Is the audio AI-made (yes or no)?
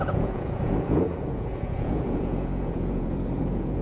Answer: yes